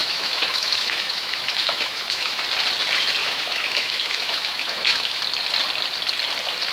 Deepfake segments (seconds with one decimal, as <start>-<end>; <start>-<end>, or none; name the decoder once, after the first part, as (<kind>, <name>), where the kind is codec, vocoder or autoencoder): 0.0-2.4 (autoencoder, DAC-VAE); 3.2-5.2